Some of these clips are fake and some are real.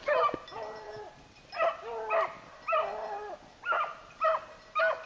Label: real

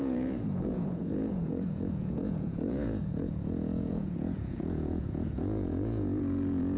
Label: fake